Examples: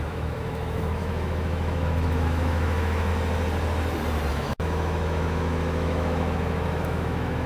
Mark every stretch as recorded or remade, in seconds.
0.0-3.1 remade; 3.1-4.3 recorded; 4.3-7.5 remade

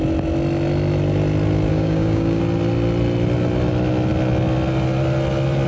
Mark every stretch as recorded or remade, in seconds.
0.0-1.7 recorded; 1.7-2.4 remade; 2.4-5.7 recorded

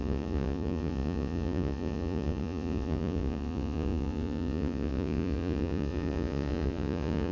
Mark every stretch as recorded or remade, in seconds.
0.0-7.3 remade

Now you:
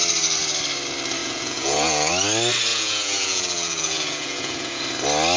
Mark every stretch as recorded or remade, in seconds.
0.0-1.2 recorded; 1.2-2.1 remade; 2.1-2.7 recorded; 2.7-4.8 remade; 4.8-5.4 recorded